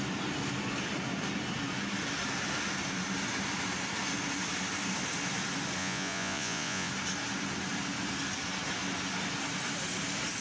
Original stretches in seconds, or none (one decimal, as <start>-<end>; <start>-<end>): 0.0-5.8; 6.9-10.4